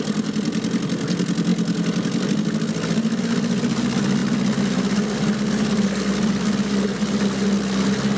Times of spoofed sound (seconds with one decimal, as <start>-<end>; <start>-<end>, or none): none